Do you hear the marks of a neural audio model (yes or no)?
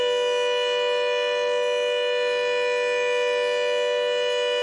no